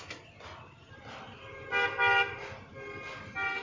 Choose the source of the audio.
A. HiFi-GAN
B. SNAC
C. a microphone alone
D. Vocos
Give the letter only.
C